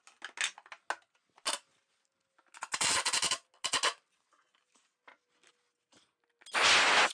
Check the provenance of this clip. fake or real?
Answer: real